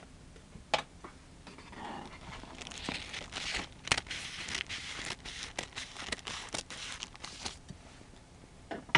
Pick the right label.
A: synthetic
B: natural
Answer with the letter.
B